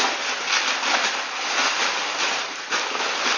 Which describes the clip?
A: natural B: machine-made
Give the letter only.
A